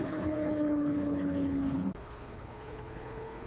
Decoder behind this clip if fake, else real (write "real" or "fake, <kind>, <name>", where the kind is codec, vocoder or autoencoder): fake, codec, HILCodec